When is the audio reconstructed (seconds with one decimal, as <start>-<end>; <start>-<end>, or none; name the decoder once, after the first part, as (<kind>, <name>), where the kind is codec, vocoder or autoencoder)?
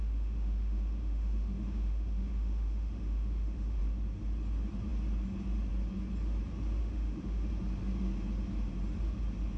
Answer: 0.0-3.8 (autoencoder, DAC-VAE); 6.8-7.5